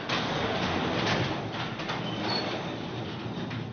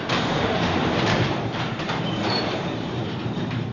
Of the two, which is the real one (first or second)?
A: first